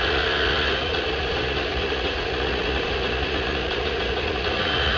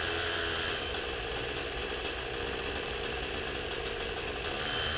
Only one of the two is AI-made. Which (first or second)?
first